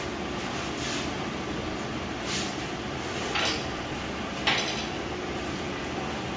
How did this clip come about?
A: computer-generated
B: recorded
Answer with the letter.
B